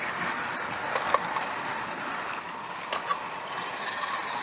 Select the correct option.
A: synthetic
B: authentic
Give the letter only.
B